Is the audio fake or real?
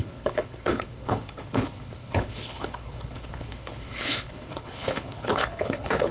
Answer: fake